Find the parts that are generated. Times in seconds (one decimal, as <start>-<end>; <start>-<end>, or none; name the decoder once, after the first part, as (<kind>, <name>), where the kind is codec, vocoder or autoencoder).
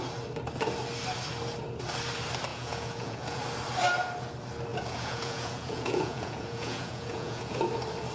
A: 2.5-3.4 (vocoder, Vocos); 4.7-7.6